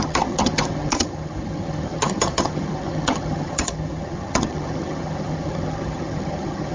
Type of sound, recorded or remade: remade